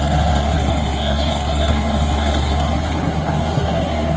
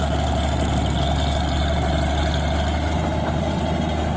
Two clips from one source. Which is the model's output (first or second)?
first